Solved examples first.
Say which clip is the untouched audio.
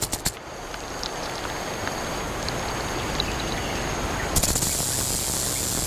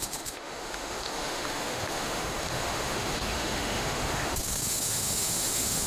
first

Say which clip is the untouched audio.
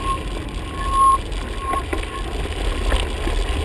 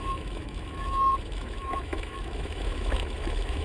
first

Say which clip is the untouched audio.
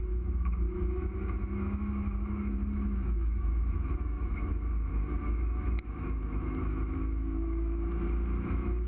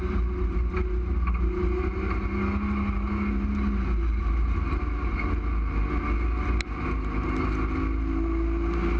second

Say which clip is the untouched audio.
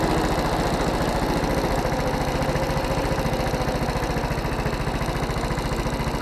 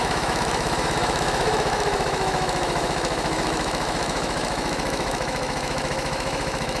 first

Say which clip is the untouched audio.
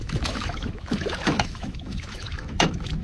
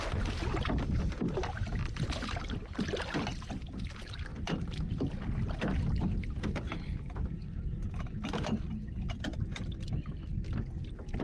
second